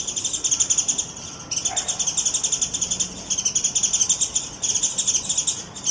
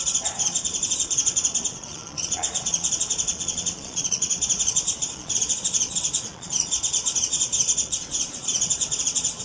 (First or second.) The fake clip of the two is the second